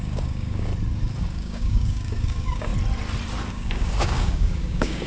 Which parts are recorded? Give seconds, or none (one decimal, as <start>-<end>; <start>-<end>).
0.7-1.3; 2.7-3.5